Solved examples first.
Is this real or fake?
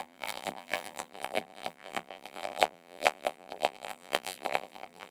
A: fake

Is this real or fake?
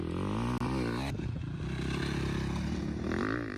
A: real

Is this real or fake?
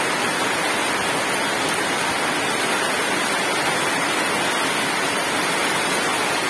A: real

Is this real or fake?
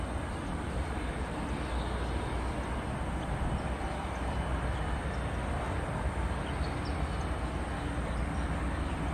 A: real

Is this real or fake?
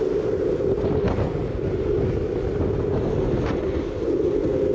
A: real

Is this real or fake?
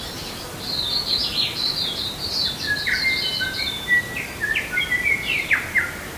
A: real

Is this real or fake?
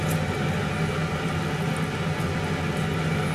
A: real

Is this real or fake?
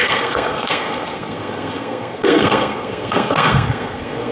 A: fake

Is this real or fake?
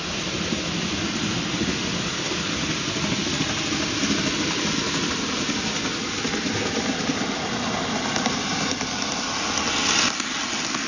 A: real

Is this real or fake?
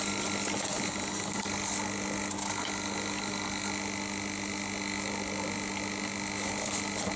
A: real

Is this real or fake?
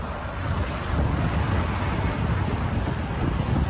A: real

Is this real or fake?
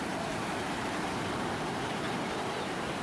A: fake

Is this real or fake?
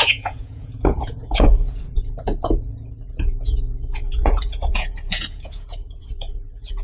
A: fake